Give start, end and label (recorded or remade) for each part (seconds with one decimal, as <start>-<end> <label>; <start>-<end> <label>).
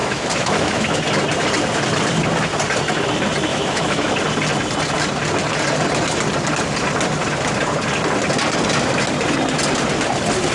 0.0-1.0 remade; 1.0-3.5 recorded; 3.5-4.1 remade; 4.1-10.5 recorded